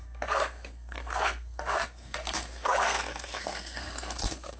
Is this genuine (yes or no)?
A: no